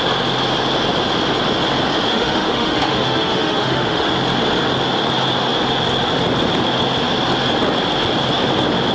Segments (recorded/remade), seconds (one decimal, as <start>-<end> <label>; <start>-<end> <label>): 0.0-2.1 recorded; 2.1-4.1 remade; 4.1-8.9 recorded